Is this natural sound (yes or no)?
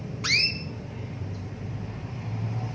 no